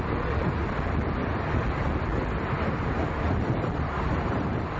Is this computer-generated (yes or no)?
no